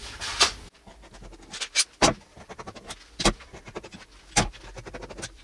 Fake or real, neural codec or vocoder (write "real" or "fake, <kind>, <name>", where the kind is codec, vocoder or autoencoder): real